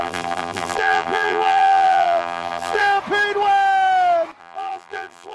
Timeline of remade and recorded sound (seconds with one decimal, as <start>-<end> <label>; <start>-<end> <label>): 0.0-2.8 remade; 2.8-4.4 recorded; 4.4-5.3 remade